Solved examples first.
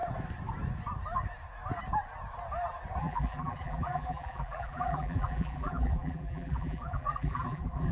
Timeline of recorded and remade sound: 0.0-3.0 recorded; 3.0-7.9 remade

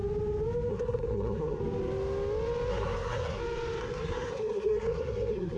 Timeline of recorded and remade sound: 0.0-0.7 recorded; 0.7-1.6 remade; 1.6-2.7 recorded; 2.7-3.4 remade; 3.4-3.8 recorded; 3.8-5.6 remade

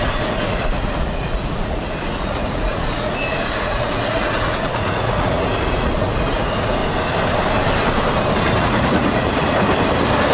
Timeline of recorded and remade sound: 0.0-6.8 remade; 6.8-8.6 recorded; 8.6-9.4 remade; 9.4-10.3 recorded

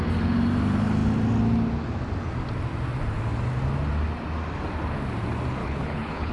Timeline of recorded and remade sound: 0.0-5.6 recorded; 5.6-6.3 remade

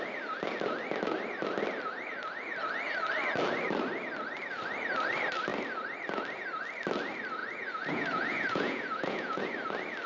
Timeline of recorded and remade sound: 0.0-7.4 recorded; 7.4-9.5 remade; 9.5-10.1 recorded

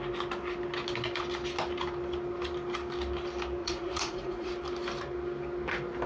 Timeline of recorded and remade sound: 0.0-3.6 recorded; 3.6-4.5 remade; 4.5-6.1 recorded